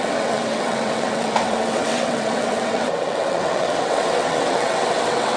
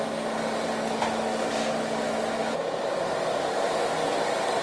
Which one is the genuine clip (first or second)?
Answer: second